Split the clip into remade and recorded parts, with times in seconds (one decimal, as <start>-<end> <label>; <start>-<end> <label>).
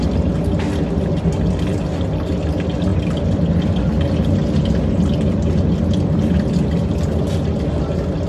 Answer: 0.0-2.9 recorded; 2.9-3.9 remade; 3.9-8.3 recorded